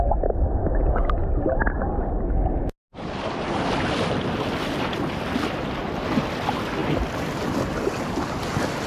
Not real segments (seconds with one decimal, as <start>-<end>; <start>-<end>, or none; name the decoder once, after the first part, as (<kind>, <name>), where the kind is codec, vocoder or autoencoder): none